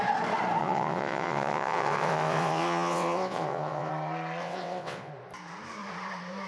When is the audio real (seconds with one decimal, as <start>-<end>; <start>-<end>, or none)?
0.0-0.6; 3.9-4.4; 5.1-6.5